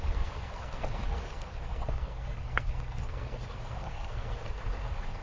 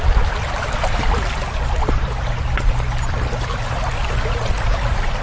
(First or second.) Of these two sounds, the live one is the second